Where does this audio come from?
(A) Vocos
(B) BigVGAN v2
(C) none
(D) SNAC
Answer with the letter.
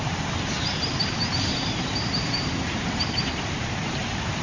B